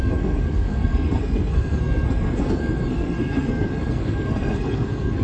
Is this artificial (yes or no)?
yes